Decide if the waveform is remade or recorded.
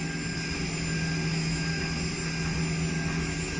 recorded